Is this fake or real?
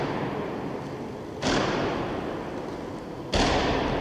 real